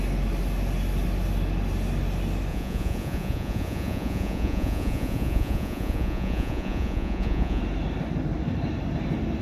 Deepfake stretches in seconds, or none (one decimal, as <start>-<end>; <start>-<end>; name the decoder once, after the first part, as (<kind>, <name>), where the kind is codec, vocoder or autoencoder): 2.5-7.6 (vocoder, Vocos)

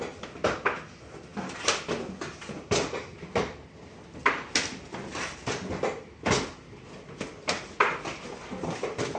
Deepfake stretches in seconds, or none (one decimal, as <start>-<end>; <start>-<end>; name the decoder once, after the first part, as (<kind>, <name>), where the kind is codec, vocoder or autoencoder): none

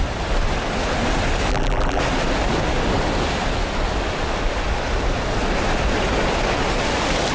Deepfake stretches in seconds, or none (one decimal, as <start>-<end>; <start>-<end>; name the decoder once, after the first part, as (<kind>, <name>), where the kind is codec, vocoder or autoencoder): 1.5-2.0 (vocoder, BigVGAN v2)

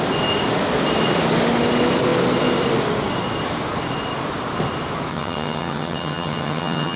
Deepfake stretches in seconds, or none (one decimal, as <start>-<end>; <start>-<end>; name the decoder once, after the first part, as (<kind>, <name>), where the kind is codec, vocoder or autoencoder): 5.1-7.0 (vocoder, HiFi-GAN)

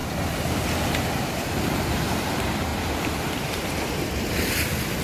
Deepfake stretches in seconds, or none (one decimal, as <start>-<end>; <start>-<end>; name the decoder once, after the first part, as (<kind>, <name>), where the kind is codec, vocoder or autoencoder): 1.3-5.0 (vocoder, BigVGAN v2)

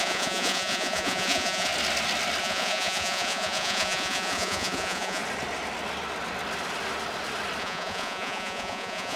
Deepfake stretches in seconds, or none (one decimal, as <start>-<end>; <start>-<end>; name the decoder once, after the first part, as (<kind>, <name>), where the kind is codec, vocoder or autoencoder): 0.0-1.7 (vocoder, Vocos); 2.4-5.2; 7.6-9.2

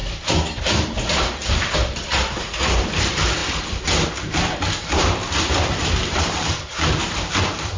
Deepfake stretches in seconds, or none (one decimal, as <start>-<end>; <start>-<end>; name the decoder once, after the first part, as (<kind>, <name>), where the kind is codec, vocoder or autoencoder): 0.0-3.4 (vocoder, BigVGAN v2); 4.1-5.2; 5.7-7.8